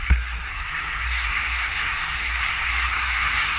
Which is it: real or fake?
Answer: fake